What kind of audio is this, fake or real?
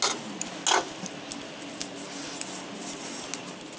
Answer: real